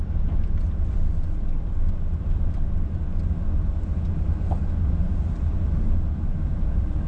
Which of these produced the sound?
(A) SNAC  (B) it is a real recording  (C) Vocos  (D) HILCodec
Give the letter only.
B